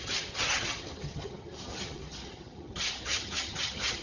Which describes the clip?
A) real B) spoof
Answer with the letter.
B